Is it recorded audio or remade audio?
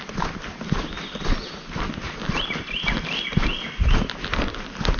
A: recorded